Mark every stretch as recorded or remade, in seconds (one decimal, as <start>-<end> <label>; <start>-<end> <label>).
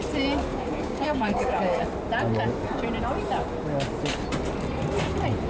0.0-0.5 recorded; 0.5-1.8 remade; 1.8-5.5 recorded